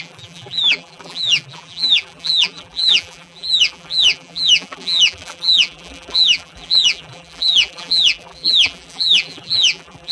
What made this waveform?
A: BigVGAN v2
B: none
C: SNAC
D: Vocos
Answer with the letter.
A